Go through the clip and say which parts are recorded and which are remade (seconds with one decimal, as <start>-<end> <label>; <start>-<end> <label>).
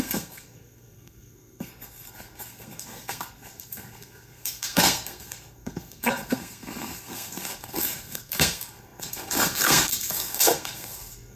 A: 0.0-11.4 remade